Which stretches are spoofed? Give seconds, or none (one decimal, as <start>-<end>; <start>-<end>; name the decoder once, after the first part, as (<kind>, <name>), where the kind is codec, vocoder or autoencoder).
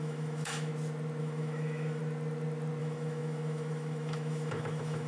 0.0-0.7 (autoencoder, DAC-VAE); 1.2-2.0; 2.8-5.1